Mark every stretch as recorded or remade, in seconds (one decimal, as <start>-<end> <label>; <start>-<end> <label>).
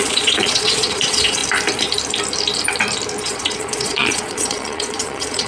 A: 0.0-1.4 remade; 1.4-3.2 recorded; 3.2-5.5 remade